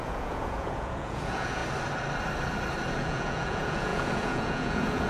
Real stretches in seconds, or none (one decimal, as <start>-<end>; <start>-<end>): 1.6-2.9